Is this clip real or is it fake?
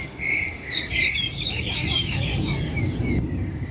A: fake